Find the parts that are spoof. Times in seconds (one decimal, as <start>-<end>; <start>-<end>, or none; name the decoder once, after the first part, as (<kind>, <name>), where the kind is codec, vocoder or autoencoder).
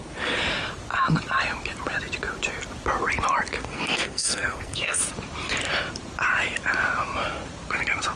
3.6-5.0 (codec, SNAC)